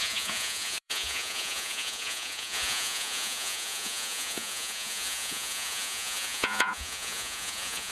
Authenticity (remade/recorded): remade